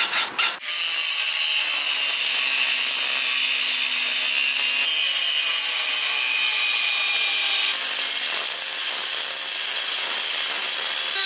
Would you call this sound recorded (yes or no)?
yes